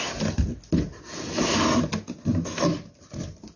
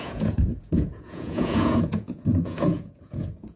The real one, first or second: first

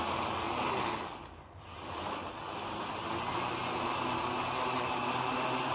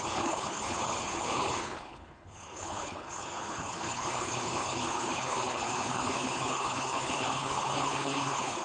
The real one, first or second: first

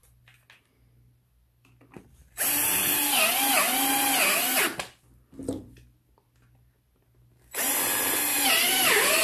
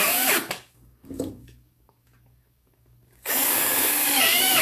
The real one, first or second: first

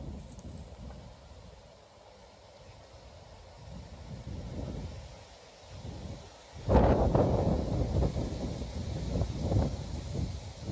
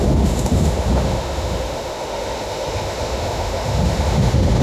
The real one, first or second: first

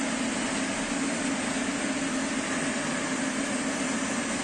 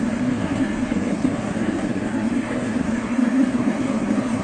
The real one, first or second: first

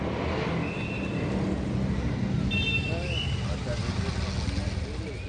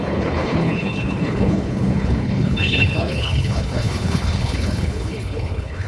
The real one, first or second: first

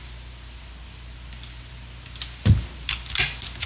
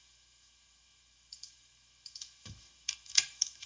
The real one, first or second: first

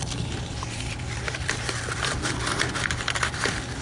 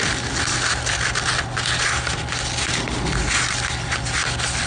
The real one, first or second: second